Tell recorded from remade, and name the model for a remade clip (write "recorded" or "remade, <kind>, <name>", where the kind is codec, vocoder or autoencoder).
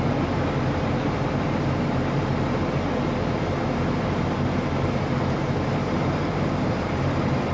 remade, vocoder, BigVGAN v2